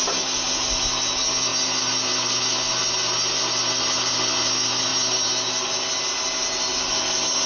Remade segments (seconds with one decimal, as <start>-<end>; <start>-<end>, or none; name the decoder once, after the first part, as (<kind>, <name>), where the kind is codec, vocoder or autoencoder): none